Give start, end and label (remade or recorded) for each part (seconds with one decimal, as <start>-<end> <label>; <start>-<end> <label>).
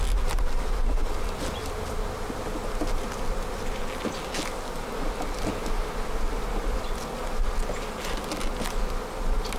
0.0-9.6 recorded